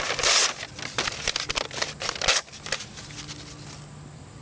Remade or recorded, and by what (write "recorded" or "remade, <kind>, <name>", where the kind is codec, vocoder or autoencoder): recorded